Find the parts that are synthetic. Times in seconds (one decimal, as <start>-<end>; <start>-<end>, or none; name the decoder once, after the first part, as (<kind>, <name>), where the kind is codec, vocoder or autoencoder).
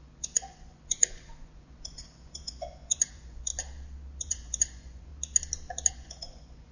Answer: 0.0-3.5 (vocoder, Vocos); 4.2-5.1; 5.9-6.7